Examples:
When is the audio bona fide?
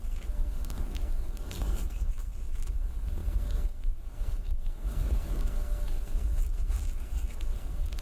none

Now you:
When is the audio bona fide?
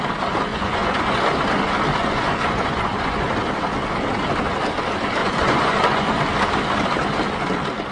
0.0-0.5; 1.2-2.0; 3.3-5.2; 6.2-7.9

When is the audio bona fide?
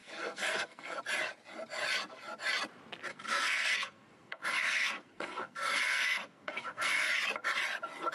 1.0-3.1; 7.1-8.1